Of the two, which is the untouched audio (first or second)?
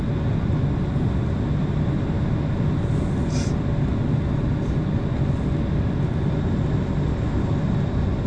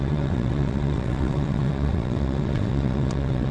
first